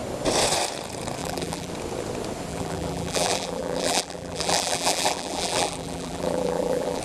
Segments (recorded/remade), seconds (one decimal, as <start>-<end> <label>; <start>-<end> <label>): 0.0-1.2 recorded; 1.2-1.7 remade; 1.7-2.5 recorded; 2.5-7.0 remade